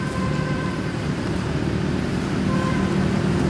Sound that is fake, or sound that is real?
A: real